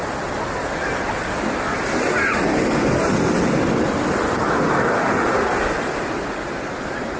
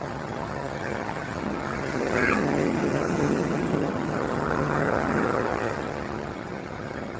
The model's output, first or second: second